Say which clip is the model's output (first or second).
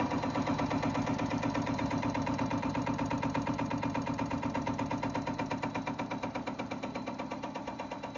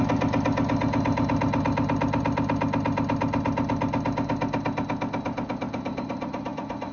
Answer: first